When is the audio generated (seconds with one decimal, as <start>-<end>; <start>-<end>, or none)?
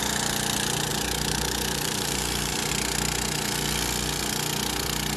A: 0.9-2.7